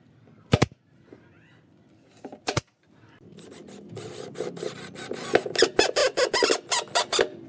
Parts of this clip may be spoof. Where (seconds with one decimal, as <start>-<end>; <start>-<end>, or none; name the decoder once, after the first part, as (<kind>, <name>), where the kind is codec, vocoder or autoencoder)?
none